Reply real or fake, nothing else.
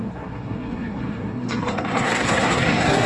fake